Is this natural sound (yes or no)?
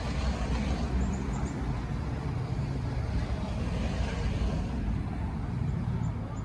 yes